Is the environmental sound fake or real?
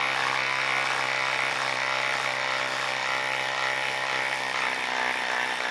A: real